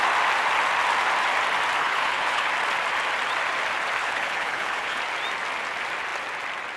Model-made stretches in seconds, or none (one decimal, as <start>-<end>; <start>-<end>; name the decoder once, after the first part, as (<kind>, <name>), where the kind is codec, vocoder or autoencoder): 1.8-2.5 (codec, HILCodec); 4.0-5.0